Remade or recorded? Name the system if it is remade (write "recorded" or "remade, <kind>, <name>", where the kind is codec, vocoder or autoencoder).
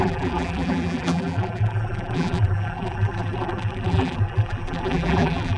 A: remade, vocoder, BigVGAN v2